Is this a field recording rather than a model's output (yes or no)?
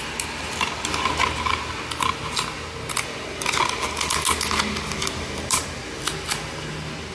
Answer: yes